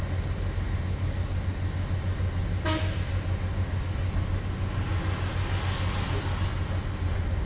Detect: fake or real real